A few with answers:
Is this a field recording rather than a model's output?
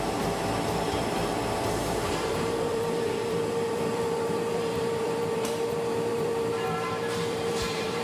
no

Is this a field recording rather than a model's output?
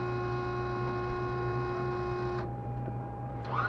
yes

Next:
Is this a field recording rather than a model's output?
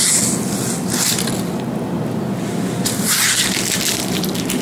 yes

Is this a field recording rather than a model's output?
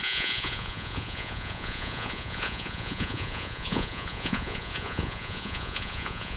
no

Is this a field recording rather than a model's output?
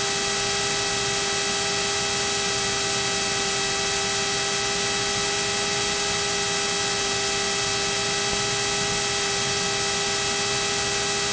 yes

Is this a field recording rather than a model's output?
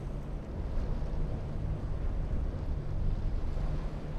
yes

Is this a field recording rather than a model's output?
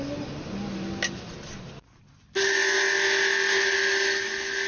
yes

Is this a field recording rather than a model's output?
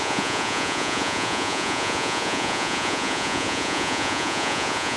no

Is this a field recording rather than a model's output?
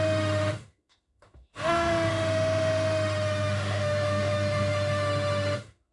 no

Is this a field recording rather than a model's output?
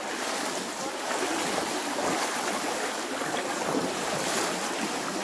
yes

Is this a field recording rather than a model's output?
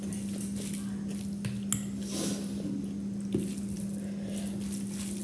yes